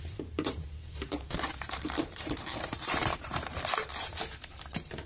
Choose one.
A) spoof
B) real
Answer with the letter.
A